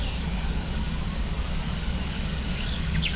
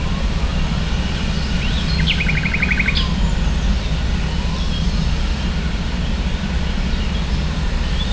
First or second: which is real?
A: second